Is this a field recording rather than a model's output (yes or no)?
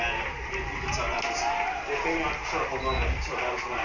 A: yes